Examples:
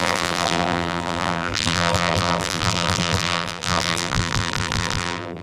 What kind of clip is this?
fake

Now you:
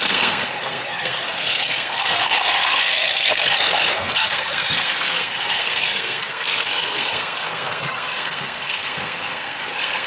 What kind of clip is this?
fake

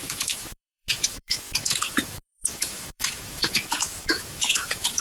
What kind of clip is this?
fake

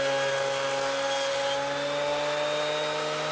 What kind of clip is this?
real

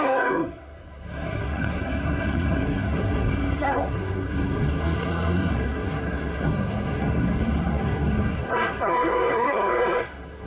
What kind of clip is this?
fake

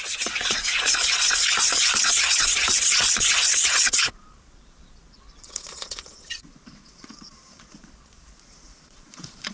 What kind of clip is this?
fake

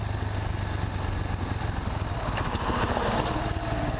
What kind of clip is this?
real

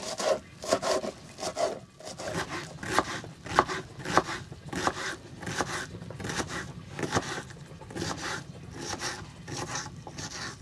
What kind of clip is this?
real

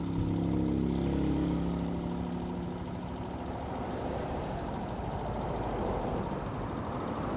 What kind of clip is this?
real